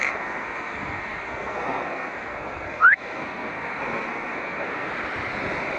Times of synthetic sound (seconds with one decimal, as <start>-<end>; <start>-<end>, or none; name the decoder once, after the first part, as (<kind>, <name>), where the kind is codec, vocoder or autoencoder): 0.0-4.9 (codec, SNAC)

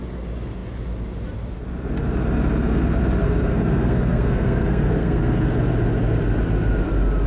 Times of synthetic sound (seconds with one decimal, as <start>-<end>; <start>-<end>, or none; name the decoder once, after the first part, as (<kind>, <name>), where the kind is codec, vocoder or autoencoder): 3.2-5.5 (codec, SNAC)

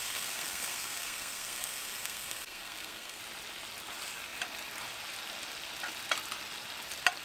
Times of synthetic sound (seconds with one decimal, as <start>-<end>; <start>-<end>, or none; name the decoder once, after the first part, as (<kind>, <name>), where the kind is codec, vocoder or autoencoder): 0.0-3.2 (codec, SNAC)

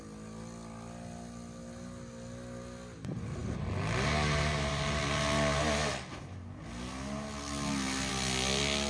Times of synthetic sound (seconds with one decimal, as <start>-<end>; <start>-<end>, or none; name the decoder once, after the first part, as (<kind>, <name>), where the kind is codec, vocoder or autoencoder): none

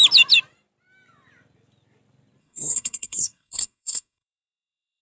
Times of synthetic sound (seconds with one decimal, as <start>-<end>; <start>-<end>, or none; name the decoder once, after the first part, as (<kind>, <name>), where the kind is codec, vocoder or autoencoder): 2.4-5.0 (codec, SNAC)

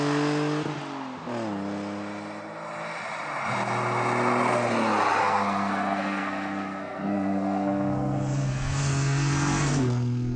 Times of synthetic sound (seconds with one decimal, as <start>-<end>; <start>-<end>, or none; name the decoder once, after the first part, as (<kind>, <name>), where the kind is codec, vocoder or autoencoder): 5.2-10.4 (codec, SNAC)

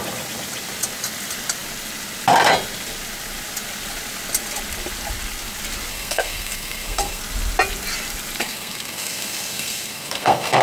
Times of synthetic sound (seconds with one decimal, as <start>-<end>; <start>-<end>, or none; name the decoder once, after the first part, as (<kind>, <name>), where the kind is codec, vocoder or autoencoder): 5.9-7.2 (codec, SNAC); 8.4-10.6